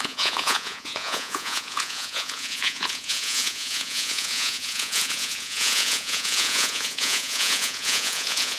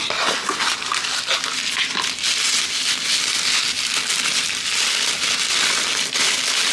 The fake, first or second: first